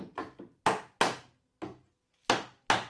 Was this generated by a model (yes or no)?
no